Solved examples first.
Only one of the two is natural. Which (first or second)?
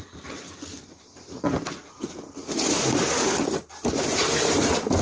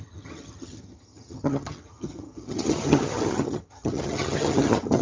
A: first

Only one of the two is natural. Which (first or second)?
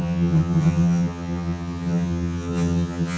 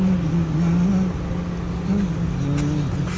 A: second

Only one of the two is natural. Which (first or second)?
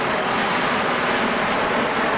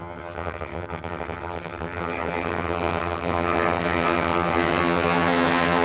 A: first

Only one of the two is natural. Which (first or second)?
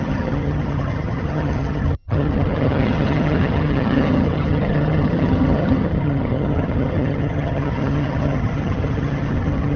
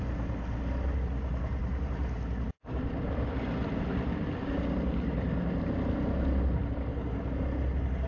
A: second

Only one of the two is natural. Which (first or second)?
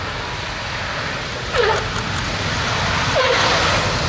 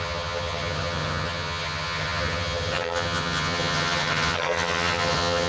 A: first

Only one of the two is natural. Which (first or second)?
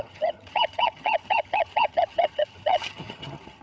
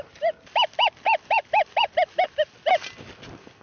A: second